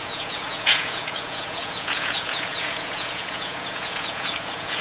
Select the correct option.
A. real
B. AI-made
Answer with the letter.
B